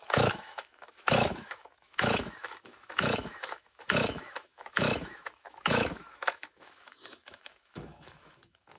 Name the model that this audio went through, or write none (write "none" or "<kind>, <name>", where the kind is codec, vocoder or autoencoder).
autoencoder, DAC-VAE